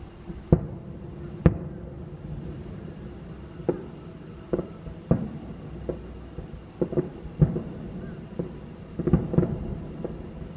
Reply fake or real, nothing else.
real